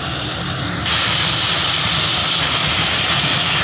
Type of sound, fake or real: real